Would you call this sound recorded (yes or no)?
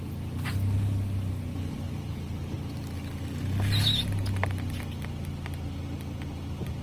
yes